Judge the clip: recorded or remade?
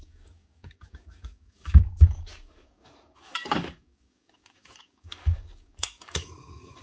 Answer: remade